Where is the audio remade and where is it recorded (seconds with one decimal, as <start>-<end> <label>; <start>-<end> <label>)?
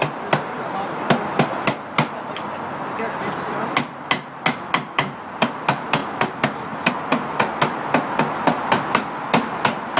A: 0.0-10.0 recorded